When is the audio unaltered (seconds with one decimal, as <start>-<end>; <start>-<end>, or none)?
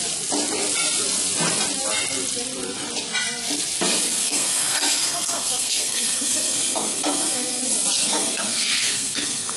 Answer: 0.0-4.2; 7.6-8.0